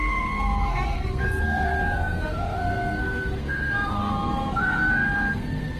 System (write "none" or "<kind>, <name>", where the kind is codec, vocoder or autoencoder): codec, SNAC